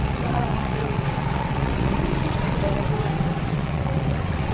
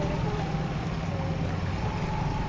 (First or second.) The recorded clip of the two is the second